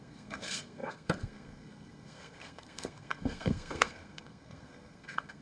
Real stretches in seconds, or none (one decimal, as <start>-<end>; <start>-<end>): none